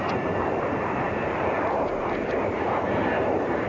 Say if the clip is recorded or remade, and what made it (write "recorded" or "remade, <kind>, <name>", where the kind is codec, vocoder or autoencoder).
remade, vocoder, BigVGAN v2